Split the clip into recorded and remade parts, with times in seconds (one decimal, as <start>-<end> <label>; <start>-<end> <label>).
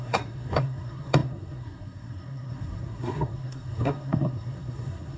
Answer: 0.0-5.2 remade